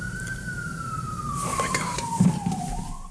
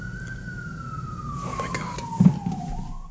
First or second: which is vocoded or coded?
first